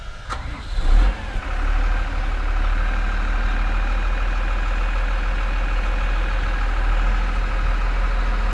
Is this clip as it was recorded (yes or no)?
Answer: yes